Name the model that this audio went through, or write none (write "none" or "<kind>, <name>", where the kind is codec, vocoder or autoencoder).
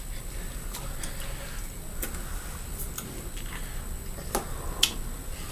none